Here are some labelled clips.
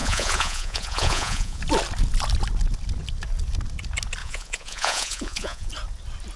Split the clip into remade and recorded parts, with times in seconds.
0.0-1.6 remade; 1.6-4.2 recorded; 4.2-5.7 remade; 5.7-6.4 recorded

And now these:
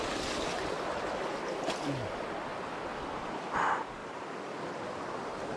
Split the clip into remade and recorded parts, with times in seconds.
0.0-5.6 recorded

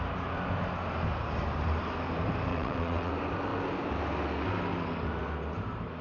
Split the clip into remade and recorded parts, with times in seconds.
0.0-2.5 recorded; 2.5-3.1 remade; 3.1-6.0 recorded

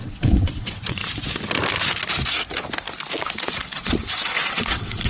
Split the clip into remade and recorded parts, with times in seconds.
0.0-1.0 remade; 1.0-3.2 recorded; 3.2-5.1 remade

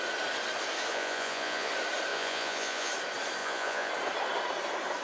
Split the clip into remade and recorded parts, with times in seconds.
0.0-0.9 recorded; 0.9-1.7 remade; 1.7-2.1 recorded; 2.1-2.9 remade; 2.9-3.4 recorded; 3.4-3.9 remade; 3.9-5.0 recorded